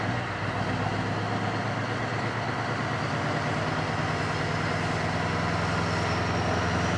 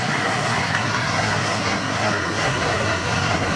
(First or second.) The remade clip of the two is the second